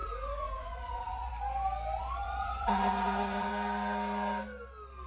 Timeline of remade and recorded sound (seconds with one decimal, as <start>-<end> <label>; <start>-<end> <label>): 0.0-1.3 remade; 1.3-2.0 recorded; 2.0-3.5 remade; 3.5-5.1 recorded